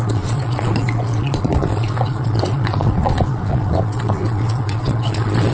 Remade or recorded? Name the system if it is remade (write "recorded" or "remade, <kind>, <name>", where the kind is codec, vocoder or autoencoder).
remade, vocoder, Vocos